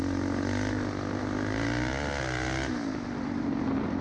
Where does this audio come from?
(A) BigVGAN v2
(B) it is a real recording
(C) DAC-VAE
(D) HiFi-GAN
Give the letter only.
B